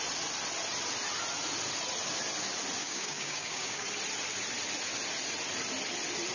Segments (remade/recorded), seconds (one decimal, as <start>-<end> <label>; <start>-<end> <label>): 0.0-2.8 recorded; 2.8-3.9 remade; 3.9-6.3 recorded